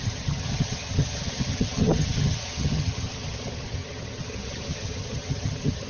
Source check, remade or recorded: remade